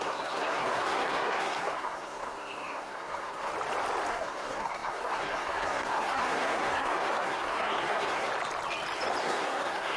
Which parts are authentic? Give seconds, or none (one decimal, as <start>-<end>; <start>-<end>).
3.5-4.1; 8.3-9.2